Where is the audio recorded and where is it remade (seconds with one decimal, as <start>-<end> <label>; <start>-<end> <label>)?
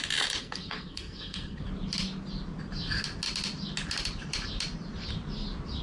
0.0-0.4 recorded; 0.4-1.6 remade; 1.6-5.8 recorded